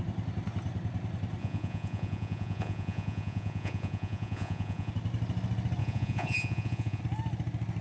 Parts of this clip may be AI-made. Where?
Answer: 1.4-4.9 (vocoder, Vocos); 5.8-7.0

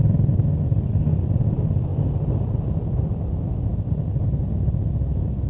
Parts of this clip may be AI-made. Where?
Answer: none